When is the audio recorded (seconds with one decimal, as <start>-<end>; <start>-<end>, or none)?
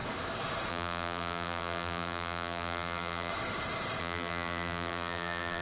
0.0-0.7; 3.3-4.0